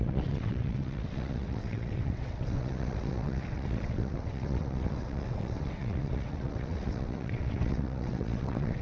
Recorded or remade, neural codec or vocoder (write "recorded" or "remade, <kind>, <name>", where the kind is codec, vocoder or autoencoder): remade, vocoder, WaveNeXt